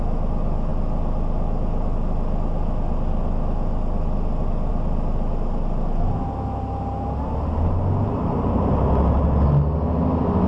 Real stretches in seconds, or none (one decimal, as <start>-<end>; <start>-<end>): 0.0-10.5